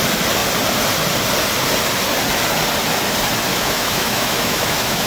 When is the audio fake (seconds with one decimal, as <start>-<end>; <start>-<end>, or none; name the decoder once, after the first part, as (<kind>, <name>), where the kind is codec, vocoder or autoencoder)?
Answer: 3.5-5.1 (autoencoder, DAC-VAE)